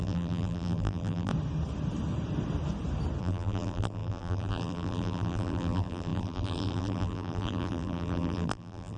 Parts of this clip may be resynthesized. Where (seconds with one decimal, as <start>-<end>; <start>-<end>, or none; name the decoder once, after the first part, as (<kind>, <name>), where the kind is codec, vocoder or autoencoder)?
0.0-1.3 (vocoder, BigVGAN v2); 3.2-9.0